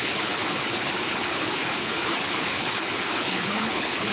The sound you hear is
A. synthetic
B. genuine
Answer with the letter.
A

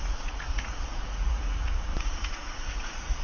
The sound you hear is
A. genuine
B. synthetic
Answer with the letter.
B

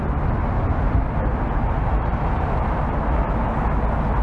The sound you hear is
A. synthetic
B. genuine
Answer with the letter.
B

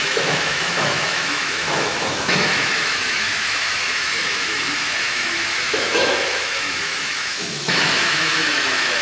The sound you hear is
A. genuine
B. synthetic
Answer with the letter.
B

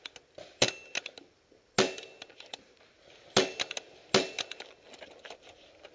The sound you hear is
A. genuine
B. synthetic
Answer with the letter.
A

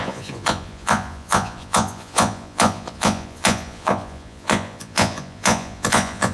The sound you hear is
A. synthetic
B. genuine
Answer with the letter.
A